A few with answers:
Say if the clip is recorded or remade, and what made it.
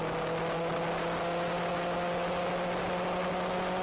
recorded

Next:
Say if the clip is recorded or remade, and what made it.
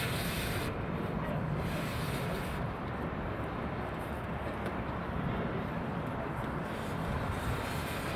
remade, vocoder, BigVGAN v2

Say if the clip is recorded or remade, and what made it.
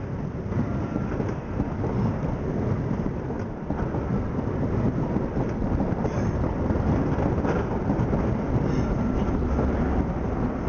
recorded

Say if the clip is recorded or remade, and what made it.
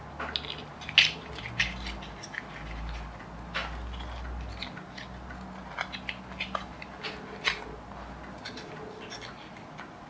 recorded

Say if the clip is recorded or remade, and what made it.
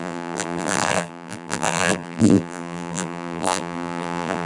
remade, vocoder, BigVGAN v2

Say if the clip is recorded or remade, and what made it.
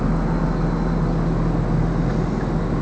recorded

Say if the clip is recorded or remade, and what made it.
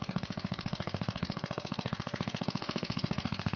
remade, codec, DAC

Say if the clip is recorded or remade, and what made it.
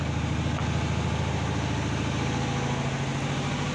recorded